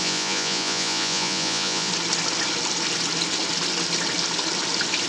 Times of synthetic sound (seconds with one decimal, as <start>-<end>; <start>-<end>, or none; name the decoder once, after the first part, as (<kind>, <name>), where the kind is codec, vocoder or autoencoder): 0.0-1.9 (vocoder, Vocos)

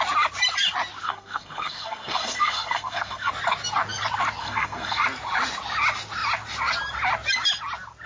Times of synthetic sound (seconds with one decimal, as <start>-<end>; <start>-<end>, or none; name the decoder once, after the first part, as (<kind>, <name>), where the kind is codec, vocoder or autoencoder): 1.0-3.3 (codec, SNAC); 4.4-5.0

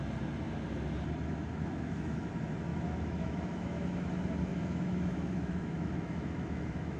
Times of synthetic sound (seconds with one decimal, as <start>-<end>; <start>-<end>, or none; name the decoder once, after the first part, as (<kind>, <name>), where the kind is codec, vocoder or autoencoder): 1.5-2.3 (autoencoder, DAC-VAE); 2.7-4.1; 4.5-7.0

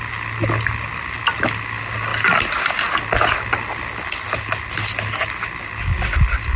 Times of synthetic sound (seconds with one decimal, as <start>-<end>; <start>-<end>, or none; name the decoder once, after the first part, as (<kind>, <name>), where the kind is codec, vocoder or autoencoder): none